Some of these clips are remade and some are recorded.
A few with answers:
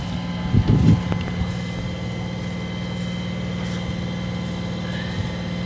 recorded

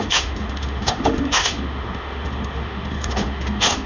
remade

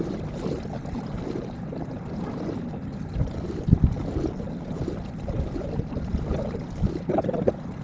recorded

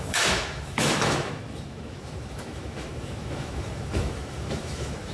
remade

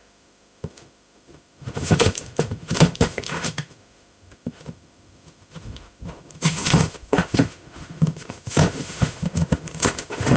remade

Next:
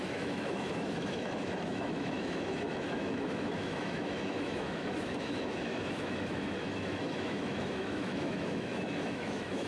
remade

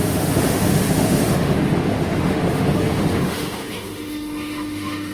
remade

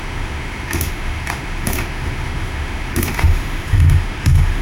remade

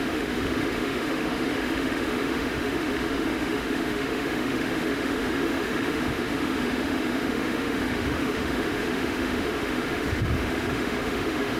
remade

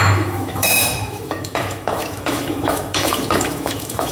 remade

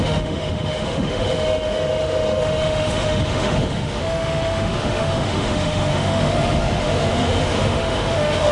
remade